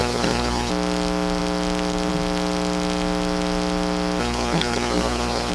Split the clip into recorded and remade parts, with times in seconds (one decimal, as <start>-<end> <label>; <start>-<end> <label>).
0.0-0.7 remade; 0.7-4.2 recorded; 4.2-5.5 remade